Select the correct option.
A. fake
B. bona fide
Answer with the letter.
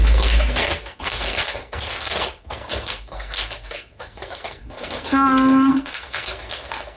A